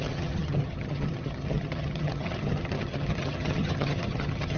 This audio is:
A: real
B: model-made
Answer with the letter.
B